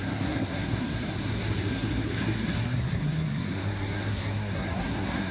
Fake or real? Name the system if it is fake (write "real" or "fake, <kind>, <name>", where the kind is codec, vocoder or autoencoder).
fake, codec, SNAC